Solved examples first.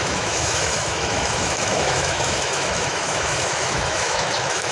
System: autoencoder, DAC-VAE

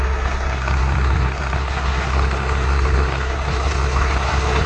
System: codec, SNAC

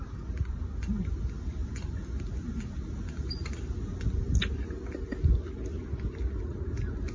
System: none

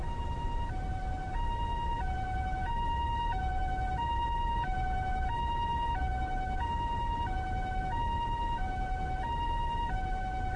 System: none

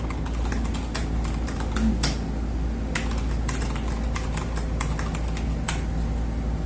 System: none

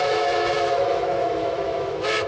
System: autoencoder, DAC-VAE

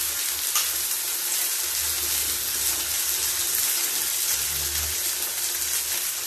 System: none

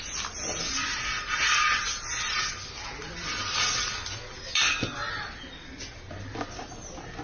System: none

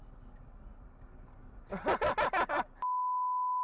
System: none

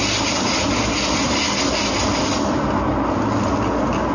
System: none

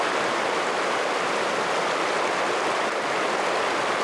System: none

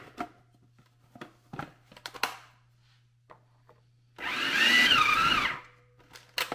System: none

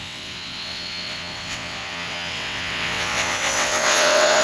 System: vocoder, WaveNeXt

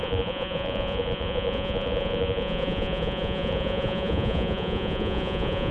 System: vocoder, Vocos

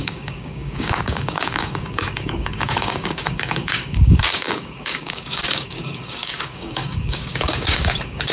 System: codec, DAC